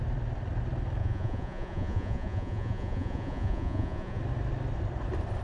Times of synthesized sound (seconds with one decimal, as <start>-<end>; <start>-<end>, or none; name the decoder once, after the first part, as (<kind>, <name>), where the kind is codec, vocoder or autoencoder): 1.0-4.2 (vocoder, Vocos)